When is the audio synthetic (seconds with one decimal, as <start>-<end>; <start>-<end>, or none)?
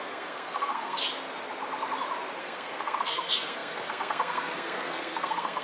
0.0-1.0; 2.4-5.6